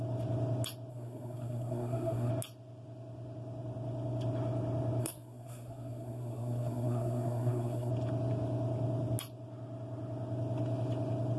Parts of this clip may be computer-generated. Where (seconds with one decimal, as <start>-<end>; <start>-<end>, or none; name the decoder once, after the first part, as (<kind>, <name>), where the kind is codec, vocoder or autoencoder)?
0.9-2.3 (codec, SNAC); 5.0-7.9